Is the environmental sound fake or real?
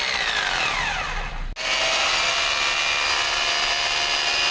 real